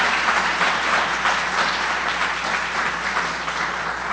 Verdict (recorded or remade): recorded